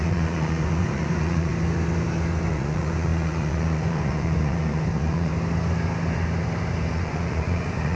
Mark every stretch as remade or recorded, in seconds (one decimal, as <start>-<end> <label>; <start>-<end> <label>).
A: 0.0-1.5 remade; 1.5-2.5 recorded; 2.5-5.3 remade; 5.3-6.9 recorded; 6.9-8.0 remade